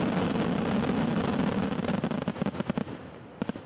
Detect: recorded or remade recorded